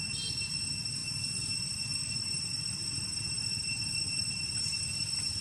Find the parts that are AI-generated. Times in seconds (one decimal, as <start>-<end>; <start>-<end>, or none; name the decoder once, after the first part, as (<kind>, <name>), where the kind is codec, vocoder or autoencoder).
none